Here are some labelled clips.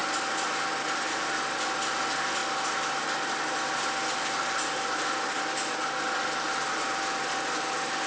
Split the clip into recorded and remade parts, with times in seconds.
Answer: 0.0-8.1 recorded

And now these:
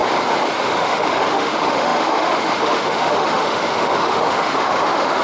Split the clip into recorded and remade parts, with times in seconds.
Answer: 0.0-0.6 recorded; 0.6-5.2 remade

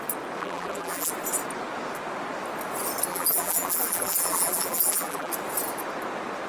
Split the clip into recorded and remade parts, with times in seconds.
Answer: 0.0-0.4 recorded; 0.4-1.1 remade; 1.1-3.1 recorded; 3.1-5.3 remade; 5.3-6.5 recorded

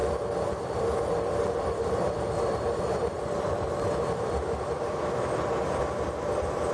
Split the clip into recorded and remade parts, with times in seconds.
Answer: 0.0-1.6 recorded; 1.6-6.7 remade

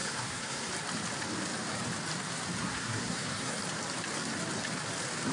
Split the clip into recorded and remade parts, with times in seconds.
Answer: 0.0-0.7 remade; 0.7-2.6 recorded; 2.6-3.6 remade; 3.6-5.3 recorded

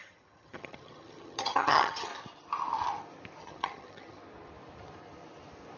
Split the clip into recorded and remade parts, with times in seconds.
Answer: 0.0-2.1 remade; 2.1-3.4 recorded; 3.4-4.2 remade; 4.2-5.8 recorded